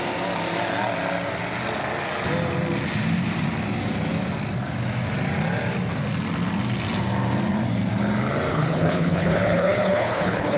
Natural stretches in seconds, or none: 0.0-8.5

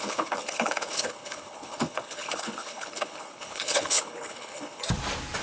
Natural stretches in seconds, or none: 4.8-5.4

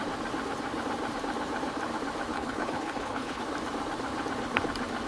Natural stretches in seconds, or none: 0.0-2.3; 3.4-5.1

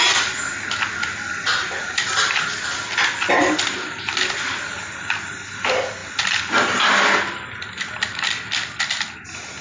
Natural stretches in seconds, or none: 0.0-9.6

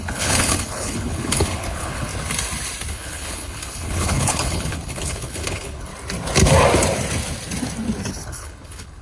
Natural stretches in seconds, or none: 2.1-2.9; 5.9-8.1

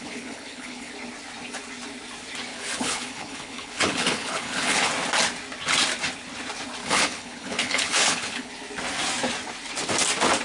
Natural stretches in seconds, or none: 0.9-2.5; 4.9-6.8; 8.5-10.4

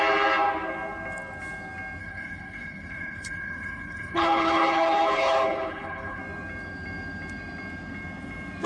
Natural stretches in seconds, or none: 0.0-2.0; 6.2-8.7

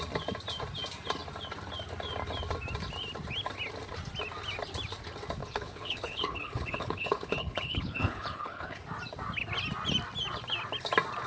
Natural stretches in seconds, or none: 0.0-5.4; 8.8-11.3